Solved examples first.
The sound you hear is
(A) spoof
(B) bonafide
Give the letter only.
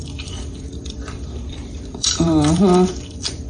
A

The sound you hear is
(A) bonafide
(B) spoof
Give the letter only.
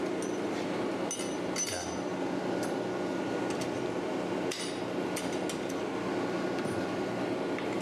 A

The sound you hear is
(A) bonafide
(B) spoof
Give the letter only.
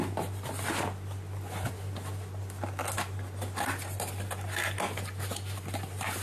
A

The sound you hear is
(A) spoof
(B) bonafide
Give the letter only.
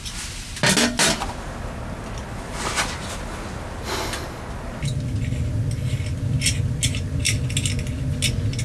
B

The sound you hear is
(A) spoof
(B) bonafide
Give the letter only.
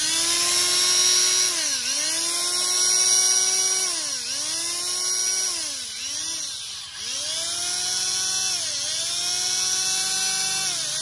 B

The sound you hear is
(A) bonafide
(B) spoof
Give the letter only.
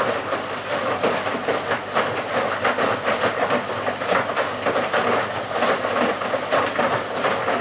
A